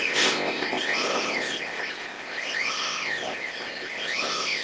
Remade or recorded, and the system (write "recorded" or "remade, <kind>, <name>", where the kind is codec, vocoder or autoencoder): remade, codec, ZipCodec